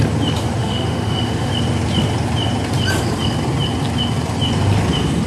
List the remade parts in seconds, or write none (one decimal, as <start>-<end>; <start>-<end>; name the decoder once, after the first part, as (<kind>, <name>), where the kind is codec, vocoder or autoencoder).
0.6-1.5 (autoencoder, DAC-VAE)